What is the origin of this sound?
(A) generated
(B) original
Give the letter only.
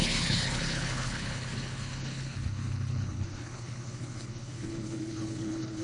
A